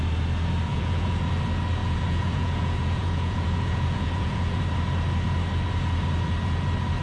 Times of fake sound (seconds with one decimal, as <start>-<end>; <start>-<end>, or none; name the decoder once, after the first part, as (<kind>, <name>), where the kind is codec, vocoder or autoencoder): 0.7-1.3 (vocoder, Vocos); 1.8-4.6